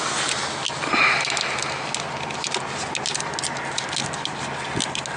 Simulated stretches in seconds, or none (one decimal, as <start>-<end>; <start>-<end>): none